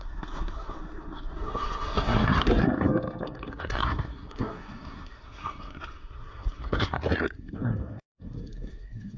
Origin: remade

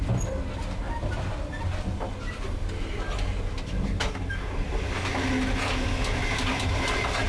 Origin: recorded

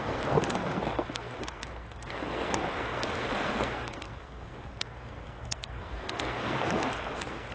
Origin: remade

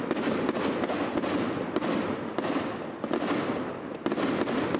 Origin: recorded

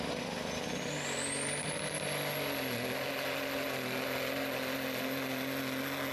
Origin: recorded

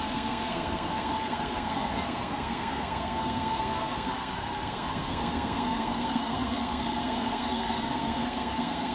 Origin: remade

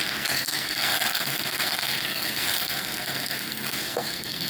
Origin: remade